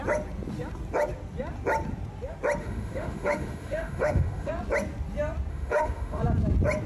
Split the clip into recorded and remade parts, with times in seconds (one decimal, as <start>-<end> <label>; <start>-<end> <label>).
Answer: 0.0-2.6 recorded; 2.6-4.5 remade; 4.5-5.5 recorded; 5.5-6.2 remade; 6.2-6.9 recorded